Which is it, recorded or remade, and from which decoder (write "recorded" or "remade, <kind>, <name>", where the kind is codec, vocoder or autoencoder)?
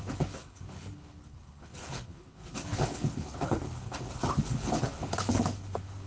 remade, codec, HILCodec